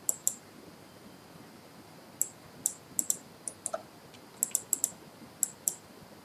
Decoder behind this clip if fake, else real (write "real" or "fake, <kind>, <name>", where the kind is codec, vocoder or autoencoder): real